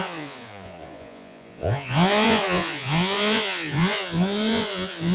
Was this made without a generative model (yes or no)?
no